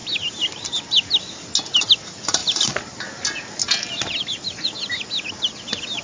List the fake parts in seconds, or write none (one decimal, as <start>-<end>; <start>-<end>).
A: none